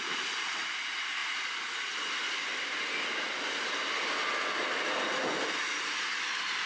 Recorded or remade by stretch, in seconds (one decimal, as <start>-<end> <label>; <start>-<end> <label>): 0.0-6.7 recorded